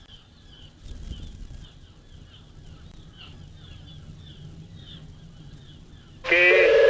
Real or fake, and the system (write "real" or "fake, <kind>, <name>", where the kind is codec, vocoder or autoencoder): real